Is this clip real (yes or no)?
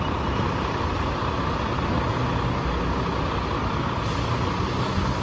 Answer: yes